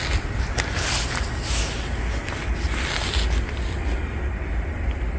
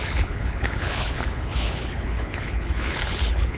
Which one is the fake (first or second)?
second